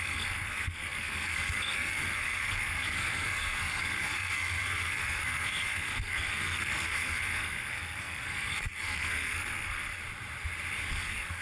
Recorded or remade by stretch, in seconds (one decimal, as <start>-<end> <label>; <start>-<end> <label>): 0.0-10.0 remade; 10.0-10.9 recorded; 10.9-11.4 remade